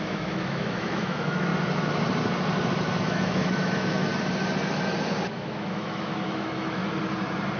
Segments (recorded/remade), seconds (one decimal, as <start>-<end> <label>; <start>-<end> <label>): 0.0-1.5 remade; 1.5-3.0 recorded; 3.0-4.1 remade; 4.1-5.3 recorded; 5.3-6.8 remade; 6.8-7.6 recorded